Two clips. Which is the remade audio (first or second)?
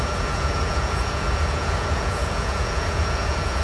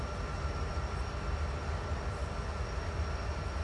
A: first